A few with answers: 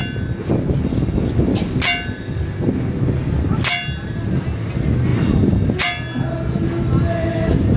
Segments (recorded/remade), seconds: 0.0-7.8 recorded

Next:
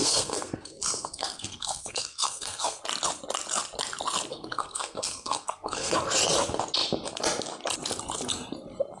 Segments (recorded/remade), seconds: 0.0-2.8 remade; 2.8-4.3 recorded; 4.3-5.9 remade; 5.9-9.0 recorded

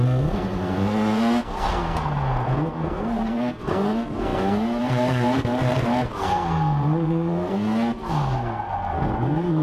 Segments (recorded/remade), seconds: 0.0-9.6 remade

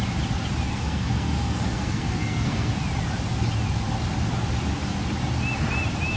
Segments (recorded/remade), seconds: 0.0-0.7 recorded; 0.7-2.7 remade; 2.7-6.2 recorded